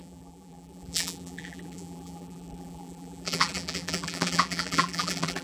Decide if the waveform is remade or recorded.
remade